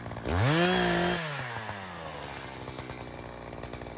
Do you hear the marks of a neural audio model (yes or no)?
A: no